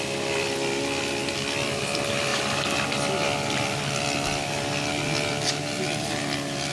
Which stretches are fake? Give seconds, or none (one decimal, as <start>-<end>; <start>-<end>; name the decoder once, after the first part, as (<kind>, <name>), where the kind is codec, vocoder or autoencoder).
none